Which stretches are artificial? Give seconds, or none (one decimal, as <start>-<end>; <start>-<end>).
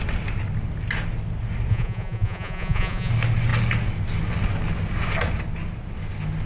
1.7-3.1